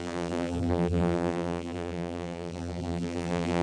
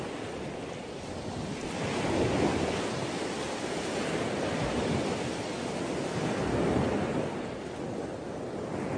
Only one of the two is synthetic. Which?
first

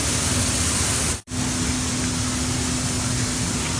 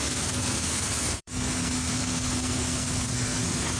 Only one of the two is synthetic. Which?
second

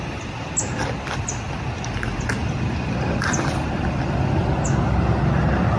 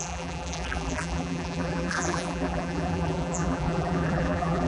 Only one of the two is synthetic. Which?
second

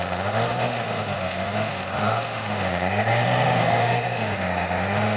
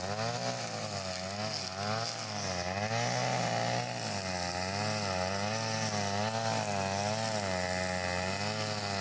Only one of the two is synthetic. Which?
first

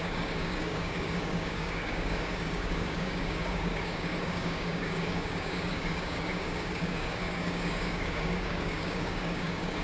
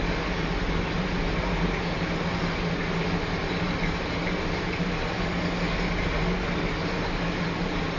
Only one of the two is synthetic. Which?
first